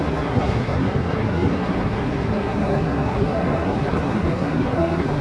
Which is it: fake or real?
fake